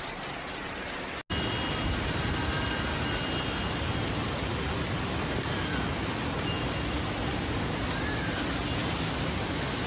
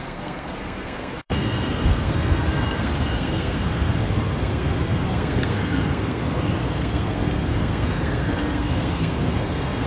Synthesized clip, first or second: second